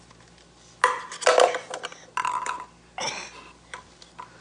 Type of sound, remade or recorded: recorded